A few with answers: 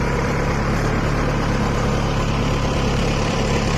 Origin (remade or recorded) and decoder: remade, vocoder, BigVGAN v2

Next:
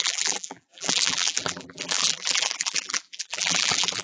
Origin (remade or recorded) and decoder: remade, vocoder, BigVGAN v2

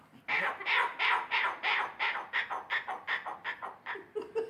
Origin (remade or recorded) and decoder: recorded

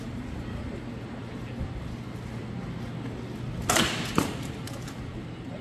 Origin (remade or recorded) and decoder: recorded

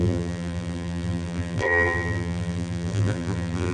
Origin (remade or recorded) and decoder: remade, vocoder, BigVGAN v2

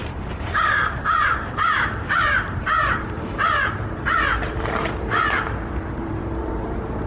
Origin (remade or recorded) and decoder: remade, vocoder, BigVGAN v2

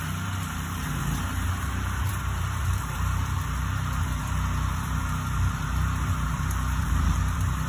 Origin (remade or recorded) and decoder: remade, vocoder, BigVGAN v2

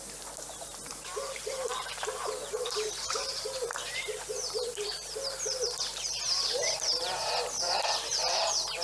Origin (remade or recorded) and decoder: remade, vocoder, BigVGAN v2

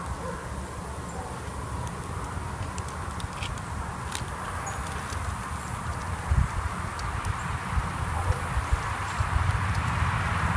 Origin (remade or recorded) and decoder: recorded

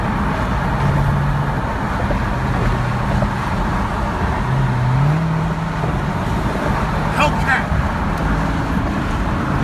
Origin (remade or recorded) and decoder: recorded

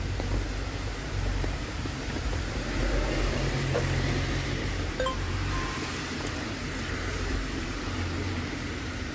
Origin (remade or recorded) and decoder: remade, vocoder, BigVGAN v2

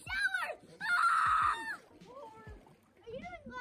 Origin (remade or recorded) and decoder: remade, vocoder, BigVGAN v2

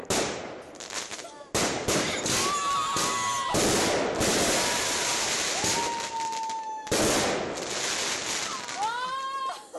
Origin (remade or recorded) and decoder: recorded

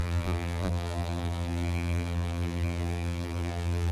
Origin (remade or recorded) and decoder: remade, vocoder, BigVGAN v2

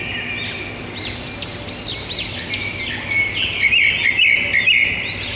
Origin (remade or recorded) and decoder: recorded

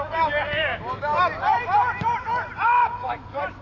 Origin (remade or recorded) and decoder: remade, vocoder, BigVGAN v2